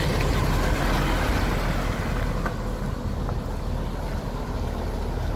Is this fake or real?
real